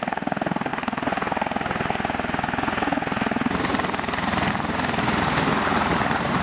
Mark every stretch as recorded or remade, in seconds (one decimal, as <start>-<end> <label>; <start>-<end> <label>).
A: 0.0-6.4 recorded